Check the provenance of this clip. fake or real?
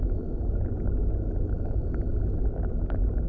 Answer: real